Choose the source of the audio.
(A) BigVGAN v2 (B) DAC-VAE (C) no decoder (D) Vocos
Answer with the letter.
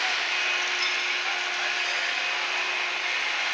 C